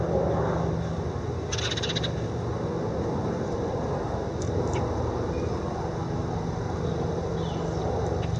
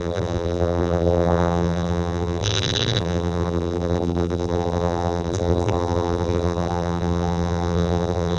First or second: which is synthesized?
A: second